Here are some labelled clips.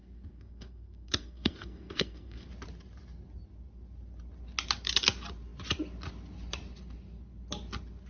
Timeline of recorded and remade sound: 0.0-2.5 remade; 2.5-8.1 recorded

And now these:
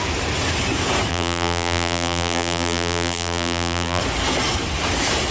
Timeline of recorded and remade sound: 0.0-1.1 recorded; 1.1-4.0 remade; 4.0-5.3 recorded

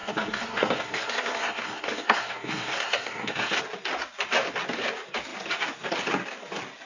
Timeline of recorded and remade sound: 0.0-3.6 remade; 3.6-6.9 recorded

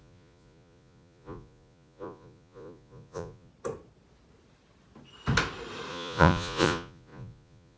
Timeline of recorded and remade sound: 0.0-3.5 remade; 3.5-5.9 recorded; 5.9-7.8 remade

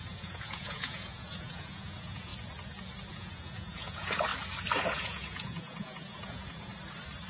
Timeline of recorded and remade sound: 0.0-2.3 remade; 2.3-3.1 recorded; 3.1-4.3 remade; 4.3-4.9 recorded; 4.9-6.7 remade; 6.7-7.3 recorded

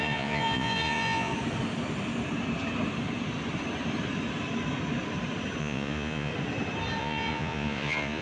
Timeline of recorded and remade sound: 0.0-1.3 remade; 1.3-5.6 recorded; 5.6-6.3 remade; 6.3-7.0 recorded; 7.0-8.2 remade

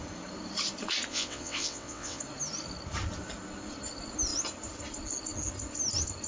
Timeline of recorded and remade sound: 0.0-1.1 recorded; 1.1-2.2 remade; 2.2-6.3 recorded

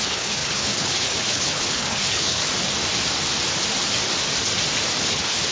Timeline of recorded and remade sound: 0.0-2.4 remade; 2.4-5.0 recorded; 5.0-5.5 remade